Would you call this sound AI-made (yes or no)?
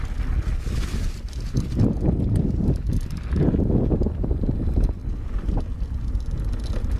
no